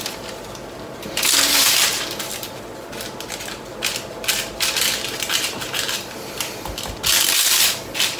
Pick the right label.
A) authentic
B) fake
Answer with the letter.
A